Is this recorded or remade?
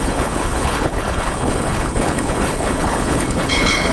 remade